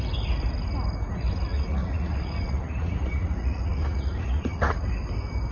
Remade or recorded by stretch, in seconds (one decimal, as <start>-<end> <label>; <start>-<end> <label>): 0.0-1.5 recorded; 1.5-4.8 remade; 4.8-5.5 recorded